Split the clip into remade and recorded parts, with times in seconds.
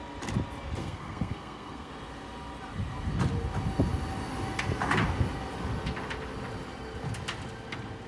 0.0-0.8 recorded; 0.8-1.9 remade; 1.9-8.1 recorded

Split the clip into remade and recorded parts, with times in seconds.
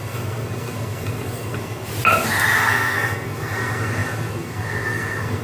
0.0-1.9 remade; 1.9-2.6 recorded; 2.6-5.4 remade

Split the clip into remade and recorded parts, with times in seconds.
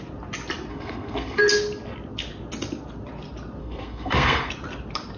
0.0-0.7 recorded; 0.7-1.4 remade; 1.4-3.6 recorded; 3.6-4.5 remade; 4.5-5.2 recorded